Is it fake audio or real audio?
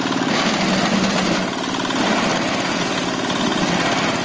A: real